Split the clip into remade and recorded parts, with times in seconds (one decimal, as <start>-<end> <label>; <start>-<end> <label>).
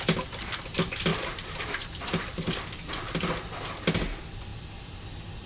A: 0.0-1.1 recorded; 1.1-3.0 remade; 3.0-4.5 recorded; 4.5-5.0 remade; 5.0-5.5 recorded